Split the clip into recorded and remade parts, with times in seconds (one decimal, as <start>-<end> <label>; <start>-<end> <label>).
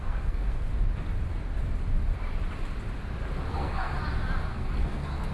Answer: 0.0-0.7 remade; 0.7-3.5 recorded; 3.5-3.9 remade; 3.9-4.5 recorded; 4.5-5.3 remade